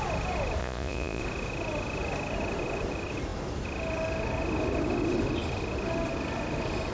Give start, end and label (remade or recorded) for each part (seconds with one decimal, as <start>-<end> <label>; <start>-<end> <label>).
0.0-0.6 recorded; 0.6-1.2 remade; 1.2-6.9 recorded